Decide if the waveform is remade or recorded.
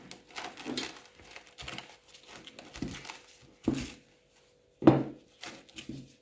recorded